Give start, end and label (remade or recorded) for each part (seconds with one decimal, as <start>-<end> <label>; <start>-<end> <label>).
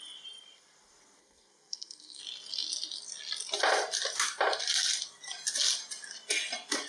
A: 0.0-1.2 recorded; 1.2-2.2 remade; 2.2-6.9 recorded